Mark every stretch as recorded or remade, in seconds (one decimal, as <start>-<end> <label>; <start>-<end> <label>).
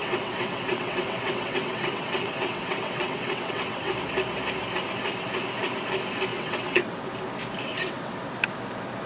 0.0-3.9 remade; 3.9-6.3 recorded; 6.3-7.1 remade; 7.1-7.7 recorded; 7.7-8.2 remade; 8.2-9.1 recorded